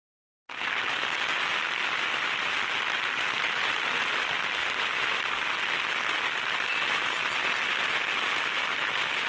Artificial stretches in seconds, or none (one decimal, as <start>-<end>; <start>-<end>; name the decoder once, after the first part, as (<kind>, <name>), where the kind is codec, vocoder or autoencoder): none